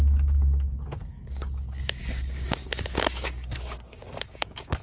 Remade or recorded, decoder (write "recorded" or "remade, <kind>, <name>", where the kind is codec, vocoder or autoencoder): remade, codec, DAC